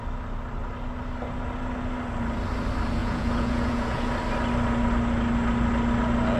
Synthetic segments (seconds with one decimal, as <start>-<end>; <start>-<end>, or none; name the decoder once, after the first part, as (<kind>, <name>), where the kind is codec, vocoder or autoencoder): 3.0-4.1 (vocoder, Vocos)